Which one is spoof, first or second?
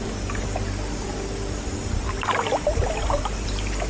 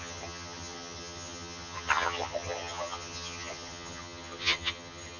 second